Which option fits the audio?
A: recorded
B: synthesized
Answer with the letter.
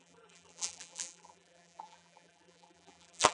B